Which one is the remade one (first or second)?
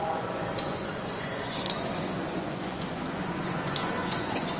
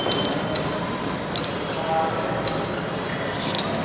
first